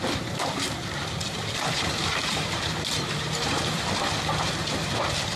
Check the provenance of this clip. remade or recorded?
remade